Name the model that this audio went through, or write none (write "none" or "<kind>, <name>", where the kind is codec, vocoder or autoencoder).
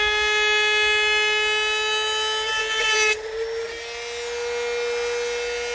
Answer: none